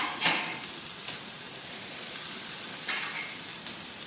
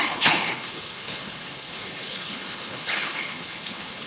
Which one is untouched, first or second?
first